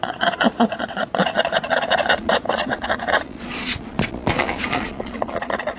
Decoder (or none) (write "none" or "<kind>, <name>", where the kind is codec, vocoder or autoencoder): vocoder, Vocos